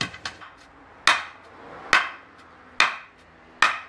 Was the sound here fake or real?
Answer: real